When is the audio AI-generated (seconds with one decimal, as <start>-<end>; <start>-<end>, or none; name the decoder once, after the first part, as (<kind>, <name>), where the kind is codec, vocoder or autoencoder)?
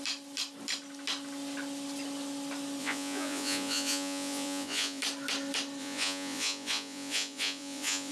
2.8-5.0 (vocoder, Vocos); 5.8-8.1